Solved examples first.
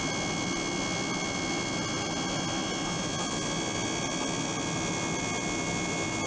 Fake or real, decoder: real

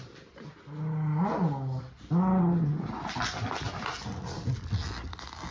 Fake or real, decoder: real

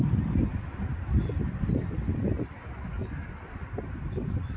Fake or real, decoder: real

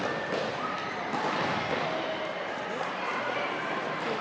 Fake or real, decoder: real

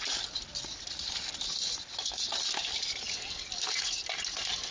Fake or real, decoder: real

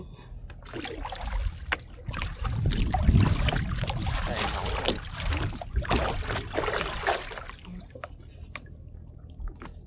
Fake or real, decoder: real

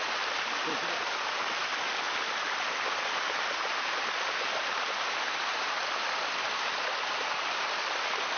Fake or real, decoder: real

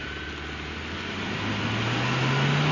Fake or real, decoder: real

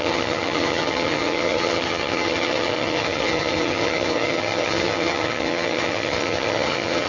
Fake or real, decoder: fake, vocoder, HiFi-GAN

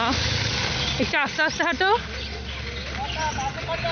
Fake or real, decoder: real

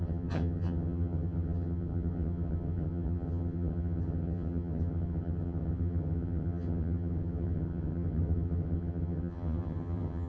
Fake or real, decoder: fake, vocoder, HiFi-GAN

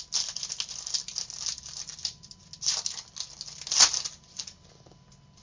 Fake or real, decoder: real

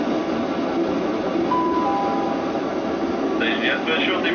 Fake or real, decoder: real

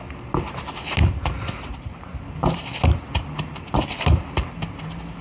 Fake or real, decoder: real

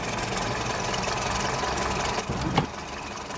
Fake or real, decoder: real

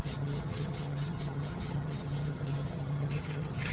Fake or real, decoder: fake, vocoder, HiFi-GAN